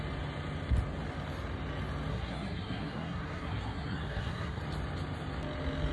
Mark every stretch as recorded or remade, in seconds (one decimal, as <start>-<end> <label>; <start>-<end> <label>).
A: 0.0-2.1 recorded; 2.1-4.6 remade; 4.6-5.9 recorded